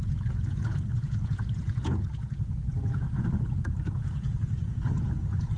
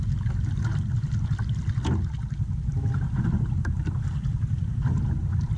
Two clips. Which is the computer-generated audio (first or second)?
first